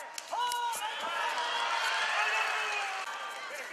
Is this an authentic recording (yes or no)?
yes